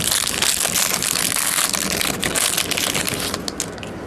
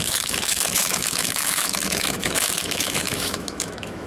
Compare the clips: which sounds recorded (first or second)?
first